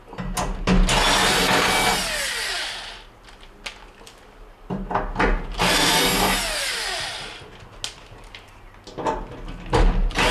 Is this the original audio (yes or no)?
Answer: yes